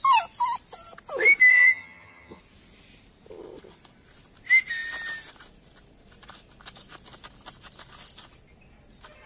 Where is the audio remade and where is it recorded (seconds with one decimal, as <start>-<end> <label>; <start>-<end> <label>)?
0.0-1.5 recorded; 1.5-2.4 remade; 2.4-9.3 recorded